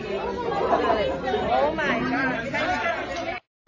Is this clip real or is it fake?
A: real